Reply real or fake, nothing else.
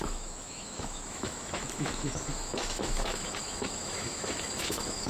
fake